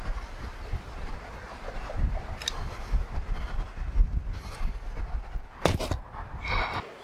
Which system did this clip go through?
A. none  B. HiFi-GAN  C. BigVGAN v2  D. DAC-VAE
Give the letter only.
A